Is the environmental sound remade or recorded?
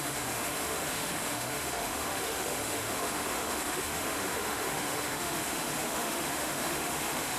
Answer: remade